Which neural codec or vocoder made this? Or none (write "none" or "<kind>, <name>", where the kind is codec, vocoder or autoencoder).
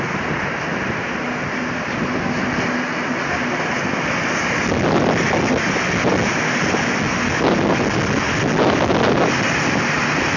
none